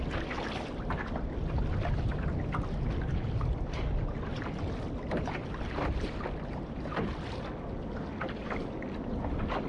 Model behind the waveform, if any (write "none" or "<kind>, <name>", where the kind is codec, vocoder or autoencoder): none